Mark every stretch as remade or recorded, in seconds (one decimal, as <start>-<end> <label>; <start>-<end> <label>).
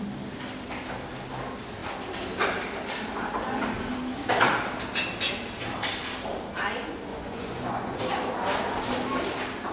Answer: 0.0-7.1 recorded; 7.1-8.0 remade; 8.0-9.7 recorded